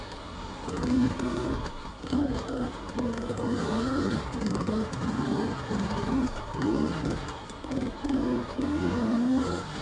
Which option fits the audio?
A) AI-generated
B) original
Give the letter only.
A